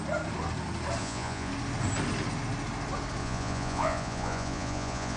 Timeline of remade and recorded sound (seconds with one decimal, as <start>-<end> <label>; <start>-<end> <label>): 0.0-1.0 recorded; 1.0-1.5 remade; 1.5-3.2 recorded; 3.2-5.2 remade